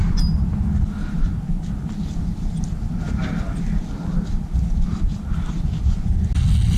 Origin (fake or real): real